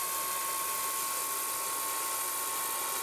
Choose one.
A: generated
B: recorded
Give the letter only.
B